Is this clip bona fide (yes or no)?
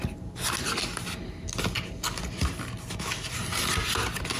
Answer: yes